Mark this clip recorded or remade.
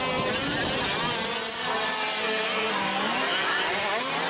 recorded